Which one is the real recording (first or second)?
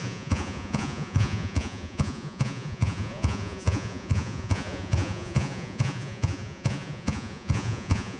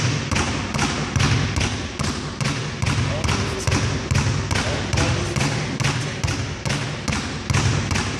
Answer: second